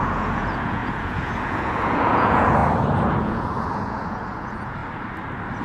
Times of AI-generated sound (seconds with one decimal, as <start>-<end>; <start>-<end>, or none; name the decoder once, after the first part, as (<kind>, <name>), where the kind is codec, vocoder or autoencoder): 0.0-2.6 (vocoder, Vocos); 3.2-4.8